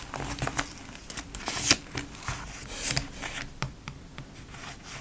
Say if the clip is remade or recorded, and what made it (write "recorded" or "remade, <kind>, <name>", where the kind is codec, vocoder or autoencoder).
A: recorded